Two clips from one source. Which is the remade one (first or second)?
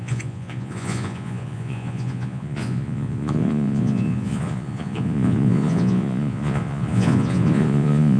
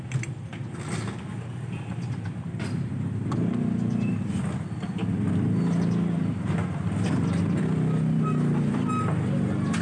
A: first